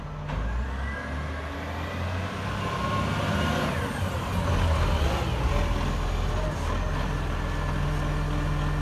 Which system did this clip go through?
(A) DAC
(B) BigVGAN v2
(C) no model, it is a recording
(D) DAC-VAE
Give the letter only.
C